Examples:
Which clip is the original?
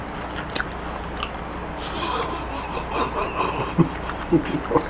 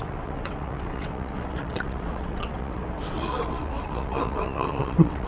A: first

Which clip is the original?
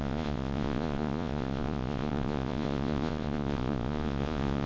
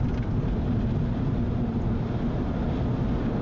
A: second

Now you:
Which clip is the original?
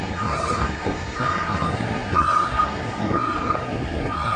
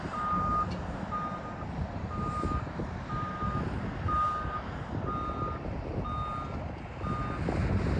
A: second